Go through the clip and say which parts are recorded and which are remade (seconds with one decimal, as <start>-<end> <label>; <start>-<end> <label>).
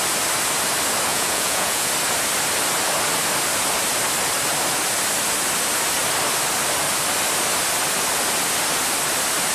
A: 0.0-1.1 recorded; 1.1-1.9 remade; 1.9-9.5 recorded